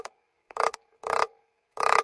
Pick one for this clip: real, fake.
fake